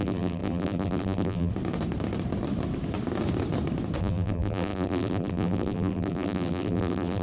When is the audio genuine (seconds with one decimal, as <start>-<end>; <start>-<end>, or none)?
1.5-4.0